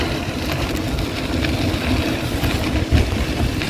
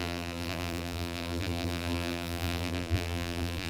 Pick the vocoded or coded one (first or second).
second